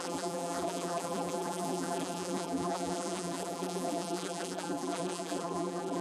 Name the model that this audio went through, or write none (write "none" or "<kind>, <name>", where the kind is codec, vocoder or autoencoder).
vocoder, BigVGAN v2